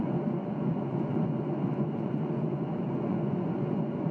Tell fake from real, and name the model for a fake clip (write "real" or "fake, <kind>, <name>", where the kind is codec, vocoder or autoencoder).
fake, vocoder, Vocos